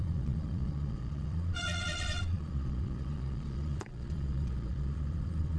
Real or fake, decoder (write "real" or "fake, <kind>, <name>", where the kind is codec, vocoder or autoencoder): fake, vocoder, Vocos